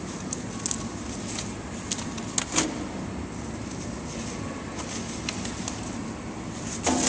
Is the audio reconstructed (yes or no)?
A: no